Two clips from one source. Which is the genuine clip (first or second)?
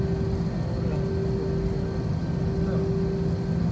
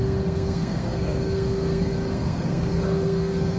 first